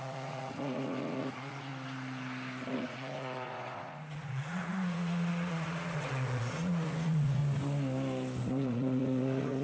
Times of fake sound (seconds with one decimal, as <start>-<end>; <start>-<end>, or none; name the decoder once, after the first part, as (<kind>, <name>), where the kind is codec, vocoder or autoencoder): 0.0-1.7 (vocoder, Vocos); 2.7-7.4; 8.5-9.6